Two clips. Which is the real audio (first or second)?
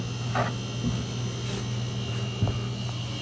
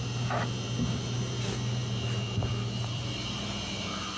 first